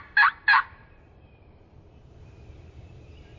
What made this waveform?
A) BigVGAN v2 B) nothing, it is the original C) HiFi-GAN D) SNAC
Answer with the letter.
A